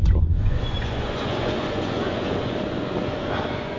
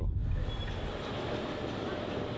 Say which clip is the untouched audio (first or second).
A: second